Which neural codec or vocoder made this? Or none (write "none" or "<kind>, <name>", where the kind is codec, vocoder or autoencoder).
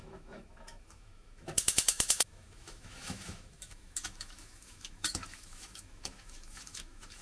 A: autoencoder, DAC-VAE